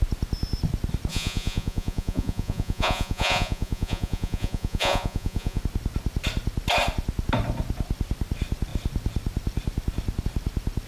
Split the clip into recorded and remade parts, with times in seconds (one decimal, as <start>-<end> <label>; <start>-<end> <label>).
0.0-1.1 recorded; 1.1-5.6 remade; 5.6-10.9 recorded